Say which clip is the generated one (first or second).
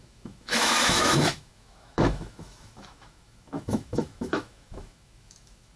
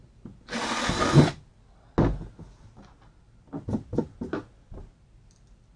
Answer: first